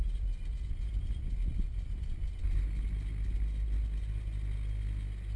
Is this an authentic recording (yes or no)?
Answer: yes